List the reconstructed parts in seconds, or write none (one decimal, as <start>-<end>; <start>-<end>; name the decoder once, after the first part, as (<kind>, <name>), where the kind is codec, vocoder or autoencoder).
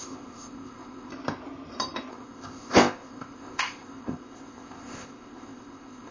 0.0-1.1 (codec, ZipCodec); 2.1-6.1